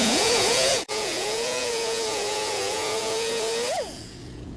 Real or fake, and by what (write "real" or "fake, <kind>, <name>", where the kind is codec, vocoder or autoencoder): fake, vocoder, Vocos